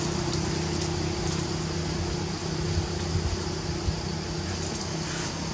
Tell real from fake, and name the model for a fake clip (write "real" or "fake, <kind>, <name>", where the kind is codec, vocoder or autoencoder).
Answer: real